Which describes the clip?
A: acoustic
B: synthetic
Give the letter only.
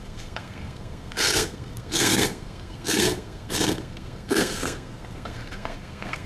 B